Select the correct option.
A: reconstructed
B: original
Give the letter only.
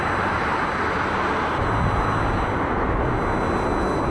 B